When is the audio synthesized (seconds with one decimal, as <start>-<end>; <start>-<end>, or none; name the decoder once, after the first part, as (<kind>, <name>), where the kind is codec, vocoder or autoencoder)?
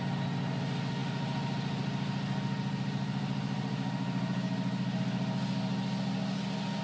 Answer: none